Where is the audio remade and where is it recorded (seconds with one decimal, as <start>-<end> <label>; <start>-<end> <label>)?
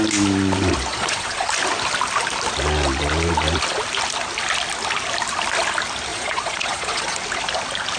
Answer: 0.0-0.9 recorded; 0.9-1.5 remade; 1.5-6.1 recorded; 6.1-7.2 remade; 7.2-8.0 recorded